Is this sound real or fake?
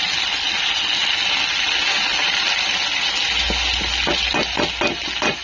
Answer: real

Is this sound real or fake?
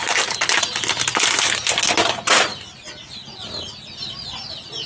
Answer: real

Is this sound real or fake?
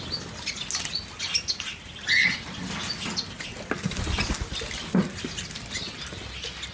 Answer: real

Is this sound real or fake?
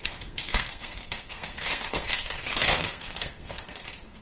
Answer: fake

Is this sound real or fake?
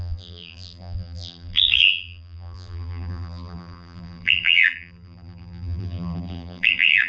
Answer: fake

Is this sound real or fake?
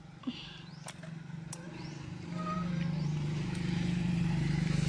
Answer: fake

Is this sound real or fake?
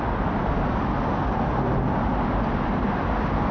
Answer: real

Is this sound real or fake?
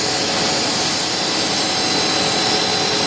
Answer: real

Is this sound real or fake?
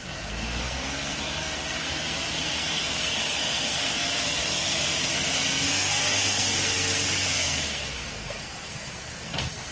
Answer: fake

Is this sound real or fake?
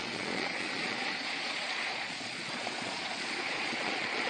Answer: fake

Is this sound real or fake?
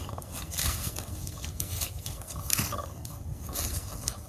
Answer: fake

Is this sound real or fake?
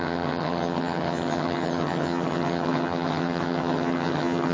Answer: fake